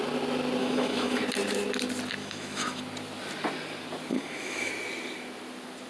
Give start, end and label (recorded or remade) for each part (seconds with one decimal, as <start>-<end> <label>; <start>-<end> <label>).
0.0-0.6 recorded; 0.6-1.2 remade; 1.2-2.2 recorded; 2.2-2.8 remade; 2.8-4.1 recorded; 4.1-4.7 remade; 4.7-5.9 recorded